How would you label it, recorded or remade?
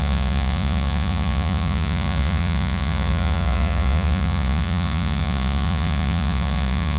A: remade